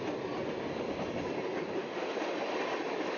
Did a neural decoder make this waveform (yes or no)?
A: no